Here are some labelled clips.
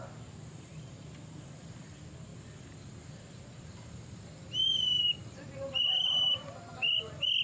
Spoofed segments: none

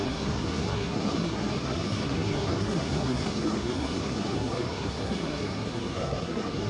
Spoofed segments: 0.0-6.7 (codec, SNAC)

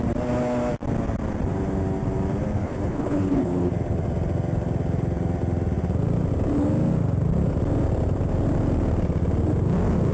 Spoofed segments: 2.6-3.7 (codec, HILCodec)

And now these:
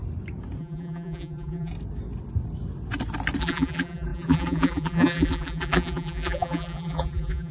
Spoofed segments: 0.6-1.7 (vocoder, BigVGAN v2); 3.4-7.5

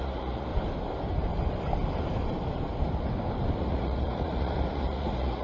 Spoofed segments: 0.0-0.5 (vocoder, Vocos); 3.6-5.4

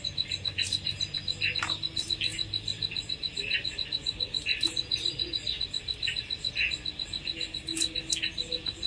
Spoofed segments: none

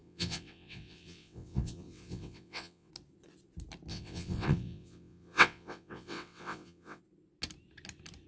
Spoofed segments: 0.0-2.9 (vocoder, WaveNeXt); 3.9-7.0